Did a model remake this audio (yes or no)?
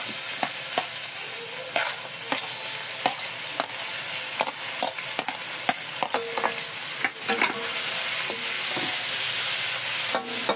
no